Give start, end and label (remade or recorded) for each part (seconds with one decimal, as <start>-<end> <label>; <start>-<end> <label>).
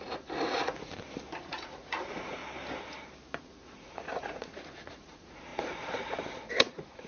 0.0-0.9 remade; 0.9-1.4 recorded; 1.4-2.4 remade; 2.4-3.4 recorded; 3.4-7.1 remade